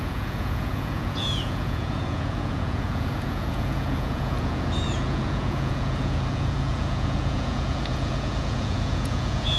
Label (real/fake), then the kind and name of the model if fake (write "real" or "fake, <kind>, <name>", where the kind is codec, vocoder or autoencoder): fake, vocoder, Vocos